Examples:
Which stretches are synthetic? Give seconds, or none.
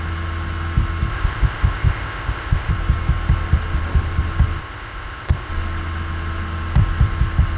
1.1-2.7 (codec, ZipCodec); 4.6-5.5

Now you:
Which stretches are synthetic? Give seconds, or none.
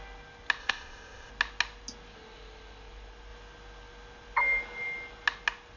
0.6-1.3 (codec, ZipCodec)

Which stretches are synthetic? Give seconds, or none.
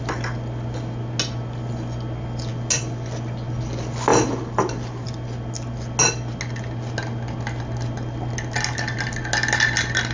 none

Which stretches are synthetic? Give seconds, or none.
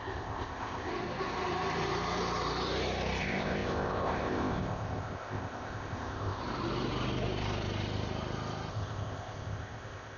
0.0-0.9 (codec, ZipCodec); 3.2-6.4; 8.7-10.2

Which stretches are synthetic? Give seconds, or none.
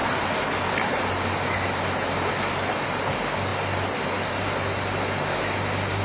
none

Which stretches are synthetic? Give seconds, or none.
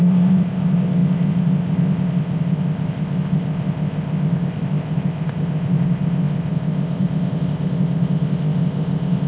0.0-9.3 (codec, ZipCodec)